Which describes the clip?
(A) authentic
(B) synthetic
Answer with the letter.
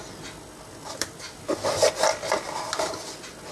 A